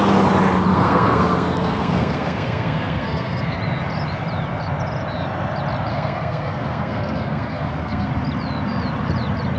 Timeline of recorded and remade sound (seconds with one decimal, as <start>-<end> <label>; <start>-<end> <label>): 0.0-0.7 recorded; 0.7-3.6 remade; 3.6-5.9 recorded; 5.9-8.1 remade; 8.1-9.6 recorded